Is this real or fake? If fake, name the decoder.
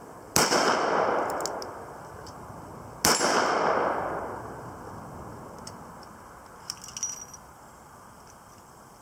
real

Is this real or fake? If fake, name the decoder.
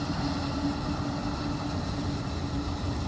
real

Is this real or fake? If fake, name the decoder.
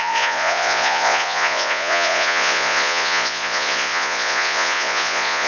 fake, vocoder, Vocos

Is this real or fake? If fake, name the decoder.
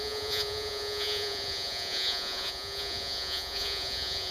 fake, vocoder, Vocos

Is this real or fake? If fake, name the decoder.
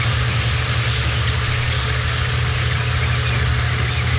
real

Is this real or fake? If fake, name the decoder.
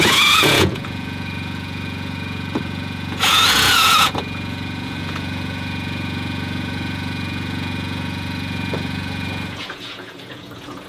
fake, vocoder, Vocos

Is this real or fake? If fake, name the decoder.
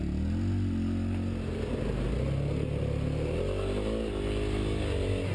real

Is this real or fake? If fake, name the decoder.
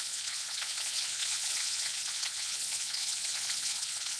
fake, vocoder, Vocos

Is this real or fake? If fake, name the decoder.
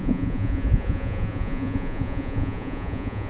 fake, vocoder, Vocos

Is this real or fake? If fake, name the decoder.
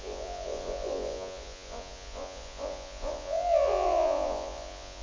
fake, vocoder, Vocos